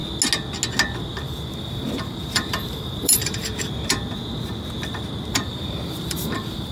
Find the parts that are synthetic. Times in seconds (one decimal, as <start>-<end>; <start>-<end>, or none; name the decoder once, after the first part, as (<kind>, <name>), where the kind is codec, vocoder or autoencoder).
1.2-3.5 (vocoder, BigVGAN v2); 5.3-6.7